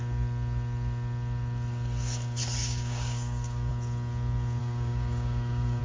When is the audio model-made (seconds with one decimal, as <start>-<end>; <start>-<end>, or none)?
2.6-3.7; 4.6-5.8